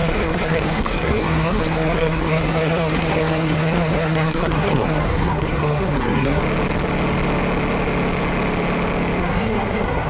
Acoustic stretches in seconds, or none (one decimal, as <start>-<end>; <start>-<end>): 6.4-9.2